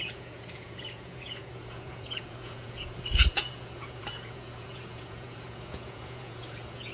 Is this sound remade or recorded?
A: remade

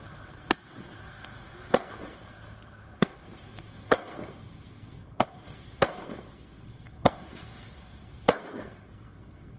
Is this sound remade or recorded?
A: remade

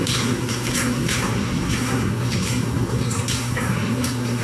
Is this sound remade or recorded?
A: remade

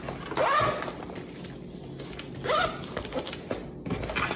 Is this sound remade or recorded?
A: recorded